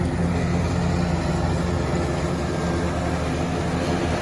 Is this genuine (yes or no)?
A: yes